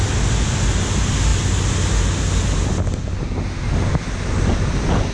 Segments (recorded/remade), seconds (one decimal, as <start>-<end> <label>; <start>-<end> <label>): 0.0-5.1 recorded